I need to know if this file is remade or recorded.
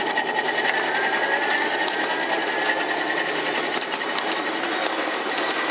recorded